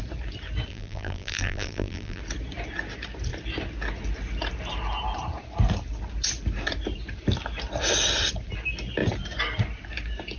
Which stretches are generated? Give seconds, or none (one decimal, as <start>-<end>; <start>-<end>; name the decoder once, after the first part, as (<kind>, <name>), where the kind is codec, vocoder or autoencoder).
0.7-2.2 (vocoder, BigVGAN v2)